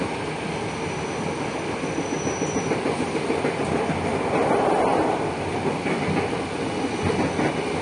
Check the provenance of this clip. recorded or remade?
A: recorded